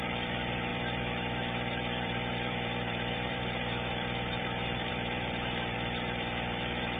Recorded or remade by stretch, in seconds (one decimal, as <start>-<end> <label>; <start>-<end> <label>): 0.0-7.0 remade